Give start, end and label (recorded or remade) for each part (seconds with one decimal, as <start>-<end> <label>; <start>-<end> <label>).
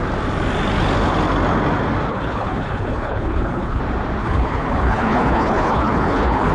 0.0-2.1 recorded; 2.1-3.8 remade; 3.8-4.2 recorded; 4.2-6.5 remade